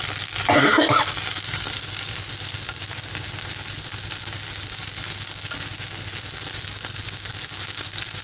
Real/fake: real